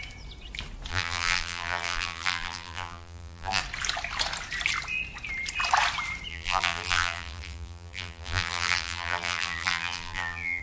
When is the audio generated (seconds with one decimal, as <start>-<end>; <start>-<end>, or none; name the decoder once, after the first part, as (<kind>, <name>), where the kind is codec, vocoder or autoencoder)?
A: 0.9-3.6 (vocoder, BigVGAN v2); 6.3-10.6